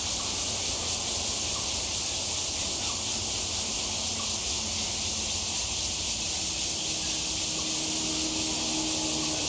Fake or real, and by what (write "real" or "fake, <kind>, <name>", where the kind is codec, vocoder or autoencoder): real